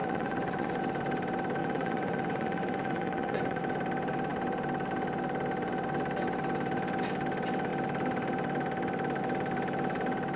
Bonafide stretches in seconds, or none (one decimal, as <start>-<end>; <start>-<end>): 0.8-1.6; 3.6-10.4